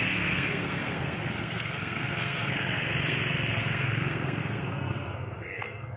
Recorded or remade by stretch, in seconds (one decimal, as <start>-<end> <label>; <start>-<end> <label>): 0.0-6.0 remade